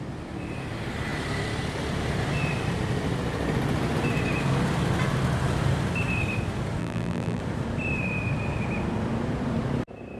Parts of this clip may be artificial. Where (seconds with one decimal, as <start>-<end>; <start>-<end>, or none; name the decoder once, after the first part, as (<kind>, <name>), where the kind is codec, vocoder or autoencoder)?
6.8-7.4 (vocoder, BigVGAN v2)